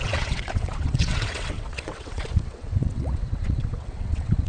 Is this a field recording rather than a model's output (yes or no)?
no